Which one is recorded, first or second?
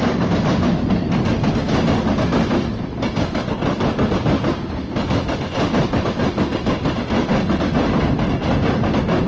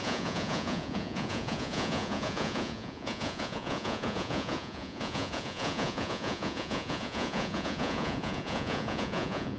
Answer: first